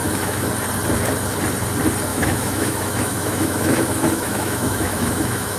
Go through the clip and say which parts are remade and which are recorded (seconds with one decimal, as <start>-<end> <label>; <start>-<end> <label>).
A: 0.0-0.5 remade; 0.5-2.1 recorded; 2.1-5.6 remade